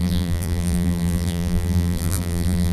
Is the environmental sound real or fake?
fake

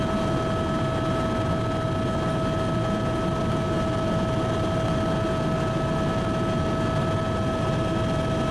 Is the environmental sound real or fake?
real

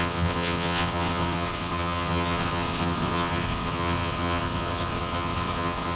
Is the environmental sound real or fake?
fake